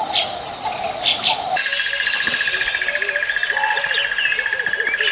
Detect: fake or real real